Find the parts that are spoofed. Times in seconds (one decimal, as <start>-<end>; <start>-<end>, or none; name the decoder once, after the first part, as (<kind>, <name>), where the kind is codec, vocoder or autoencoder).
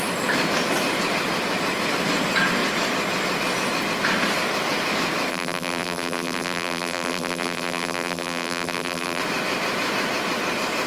5.3-9.2 (vocoder, BigVGAN v2)